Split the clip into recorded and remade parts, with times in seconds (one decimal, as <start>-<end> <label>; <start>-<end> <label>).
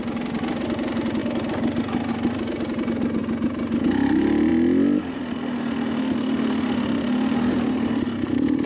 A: 0.0-8.7 recorded